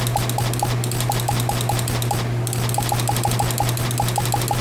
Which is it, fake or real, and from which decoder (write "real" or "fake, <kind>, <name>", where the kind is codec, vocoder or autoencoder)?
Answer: real